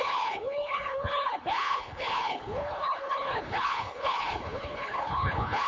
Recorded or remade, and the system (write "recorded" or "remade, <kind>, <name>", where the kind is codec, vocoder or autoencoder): remade, codec, HILCodec